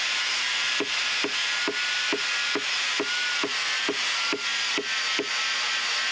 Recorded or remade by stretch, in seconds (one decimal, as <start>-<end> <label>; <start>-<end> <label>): 0.0-6.1 recorded